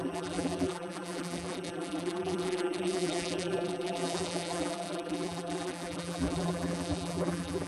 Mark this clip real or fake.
fake